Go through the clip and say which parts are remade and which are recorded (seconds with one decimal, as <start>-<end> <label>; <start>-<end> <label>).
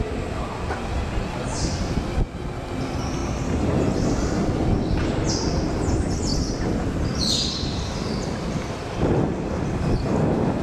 0.0-10.6 recorded